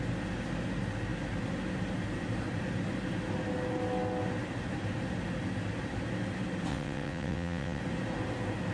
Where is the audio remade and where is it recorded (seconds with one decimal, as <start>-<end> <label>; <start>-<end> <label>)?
0.0-6.7 recorded; 6.7-7.8 remade; 7.8-8.7 recorded